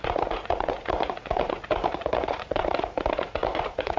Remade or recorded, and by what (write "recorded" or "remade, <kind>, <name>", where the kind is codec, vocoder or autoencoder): remade, vocoder, Vocos